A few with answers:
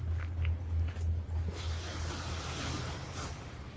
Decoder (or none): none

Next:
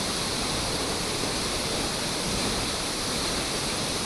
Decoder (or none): vocoder, BigVGAN v2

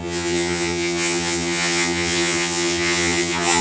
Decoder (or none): vocoder, HiFi-GAN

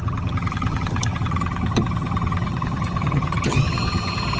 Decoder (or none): vocoder, HiFi-GAN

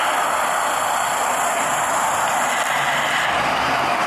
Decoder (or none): none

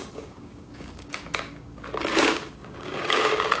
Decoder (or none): codec, DAC